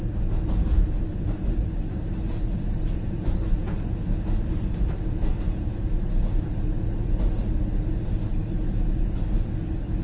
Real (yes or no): yes